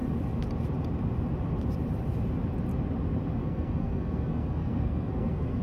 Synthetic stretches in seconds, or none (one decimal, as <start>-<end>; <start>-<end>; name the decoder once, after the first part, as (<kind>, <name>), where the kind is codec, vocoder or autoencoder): 3.4-5.6 (codec, SNAC)